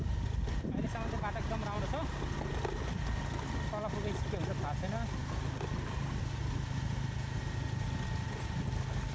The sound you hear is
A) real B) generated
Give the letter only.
A